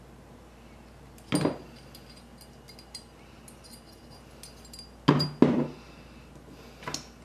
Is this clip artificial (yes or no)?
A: no